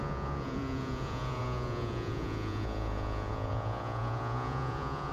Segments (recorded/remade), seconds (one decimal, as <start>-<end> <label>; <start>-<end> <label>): 0.0-5.1 remade